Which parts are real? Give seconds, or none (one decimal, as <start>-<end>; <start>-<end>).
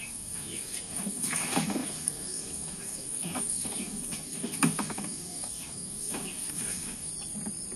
7.1-7.8